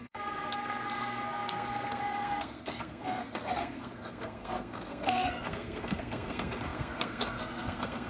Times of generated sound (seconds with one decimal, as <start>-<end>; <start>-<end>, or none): 0.0-8.1